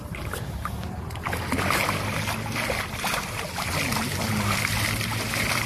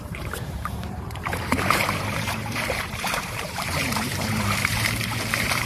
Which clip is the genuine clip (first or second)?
first